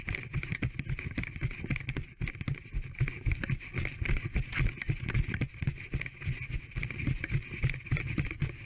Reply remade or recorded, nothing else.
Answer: recorded